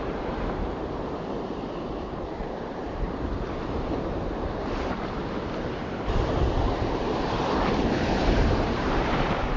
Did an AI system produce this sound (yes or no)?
yes